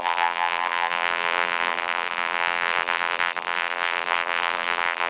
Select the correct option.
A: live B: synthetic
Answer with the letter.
B